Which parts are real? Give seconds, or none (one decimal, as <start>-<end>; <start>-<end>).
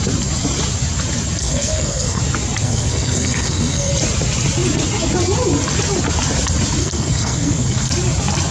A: 0.0-1.4; 2.2-2.6; 3.9-6.8; 7.9-8.5